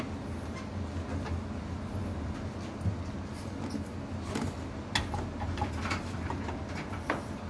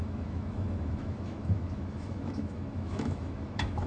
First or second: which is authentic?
first